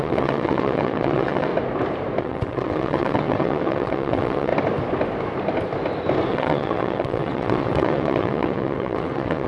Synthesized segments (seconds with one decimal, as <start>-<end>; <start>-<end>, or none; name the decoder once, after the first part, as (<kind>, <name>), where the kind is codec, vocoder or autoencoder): 0.0-1.5 (vocoder, WaveNeXt); 2.2-4.5; 6.3-9.5

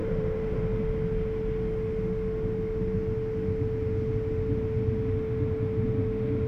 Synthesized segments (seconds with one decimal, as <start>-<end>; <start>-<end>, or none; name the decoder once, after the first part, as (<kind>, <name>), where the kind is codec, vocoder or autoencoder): 0.0-0.6 (vocoder, BigVGAN v2)